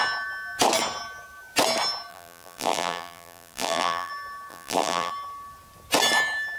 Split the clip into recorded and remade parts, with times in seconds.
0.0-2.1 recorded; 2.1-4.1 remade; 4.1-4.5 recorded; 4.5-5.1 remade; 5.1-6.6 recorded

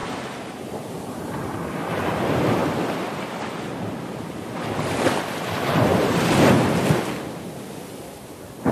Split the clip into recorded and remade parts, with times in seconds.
0.0-0.6 recorded; 0.6-5.9 remade; 5.9-7.2 recorded; 7.2-8.7 remade

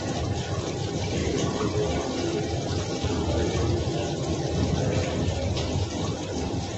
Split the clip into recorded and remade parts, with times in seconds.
0.0-6.8 remade

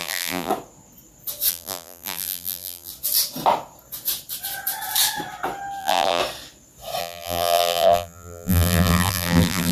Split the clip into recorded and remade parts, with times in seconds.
0.0-0.5 remade; 0.5-1.5 recorded; 1.5-2.9 remade; 2.9-5.8 recorded; 5.8-6.2 remade; 6.2-7.0 recorded; 7.0-9.7 remade

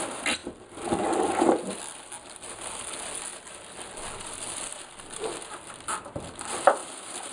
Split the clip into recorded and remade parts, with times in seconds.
0.0-6.8 recorded; 6.8-7.3 remade

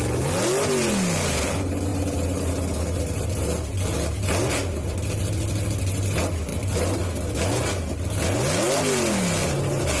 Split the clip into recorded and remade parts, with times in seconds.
0.0-1.9 recorded; 1.9-2.5 remade; 2.5-10.0 recorded